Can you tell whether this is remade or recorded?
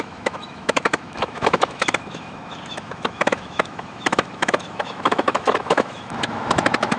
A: remade